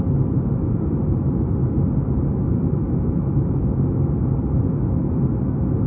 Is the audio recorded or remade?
recorded